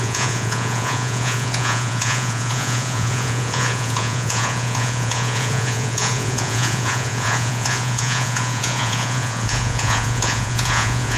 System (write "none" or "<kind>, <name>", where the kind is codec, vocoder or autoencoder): vocoder, Vocos